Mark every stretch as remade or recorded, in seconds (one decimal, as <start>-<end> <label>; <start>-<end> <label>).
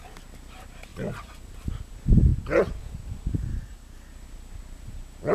0.0-3.5 recorded; 3.5-4.1 remade; 4.1-5.3 recorded